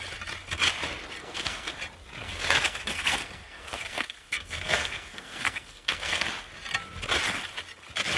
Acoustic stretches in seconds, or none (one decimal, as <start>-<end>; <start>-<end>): 0.0-1.2; 1.7-2.2; 6.3-8.2